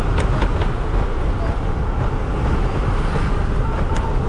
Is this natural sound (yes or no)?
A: yes